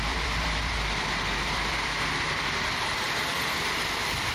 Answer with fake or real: fake